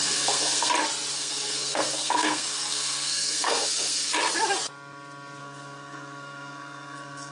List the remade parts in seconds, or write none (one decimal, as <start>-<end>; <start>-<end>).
0.0-0.7; 1.1-4.1; 5.4-7.3